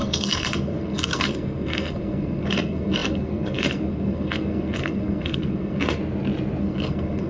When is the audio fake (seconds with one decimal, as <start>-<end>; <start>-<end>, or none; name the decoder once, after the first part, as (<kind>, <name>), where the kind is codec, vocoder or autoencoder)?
0.0-6.0 (codec, SNAC); 6.6-7.3